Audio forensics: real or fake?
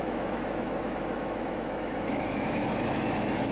fake